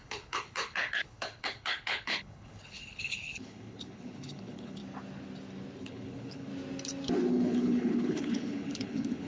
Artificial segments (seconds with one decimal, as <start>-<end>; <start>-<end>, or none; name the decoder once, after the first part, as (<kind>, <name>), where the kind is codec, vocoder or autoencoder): 0.0-4.8 (codec, HILCodec); 5.8-6.5; 7.3-9.3

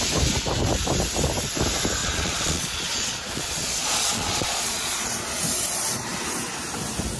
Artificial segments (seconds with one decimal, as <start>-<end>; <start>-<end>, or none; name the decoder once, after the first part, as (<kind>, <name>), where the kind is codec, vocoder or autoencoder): 2.0-5.1 (vocoder, Vocos)

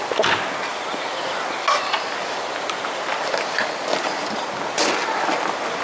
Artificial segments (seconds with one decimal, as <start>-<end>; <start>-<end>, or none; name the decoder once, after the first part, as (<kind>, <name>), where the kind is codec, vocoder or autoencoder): none

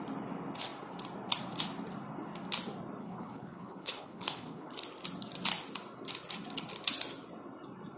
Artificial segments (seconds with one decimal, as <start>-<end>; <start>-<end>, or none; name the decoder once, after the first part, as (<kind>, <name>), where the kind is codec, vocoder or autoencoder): 3.0-4.7 (codec, HILCodec)

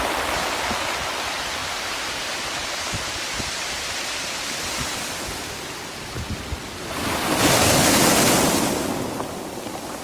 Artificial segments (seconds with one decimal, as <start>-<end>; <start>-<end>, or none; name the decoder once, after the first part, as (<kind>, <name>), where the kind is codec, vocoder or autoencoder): 1.6-2.2 (vocoder, BigVGAN v2); 4.2-5.4

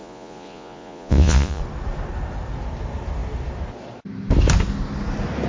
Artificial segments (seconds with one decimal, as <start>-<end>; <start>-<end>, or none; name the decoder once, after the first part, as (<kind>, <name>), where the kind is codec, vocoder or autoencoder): 0.0-1.6 (vocoder, Vocos)

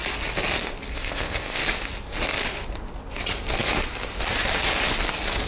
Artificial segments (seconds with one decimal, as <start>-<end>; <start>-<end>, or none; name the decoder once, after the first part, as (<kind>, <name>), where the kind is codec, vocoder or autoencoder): 0.9-1.6 (codec, ZipCodec)